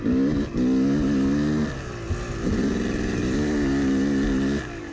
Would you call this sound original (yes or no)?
yes